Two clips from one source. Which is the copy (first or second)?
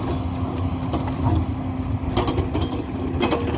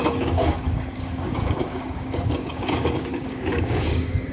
second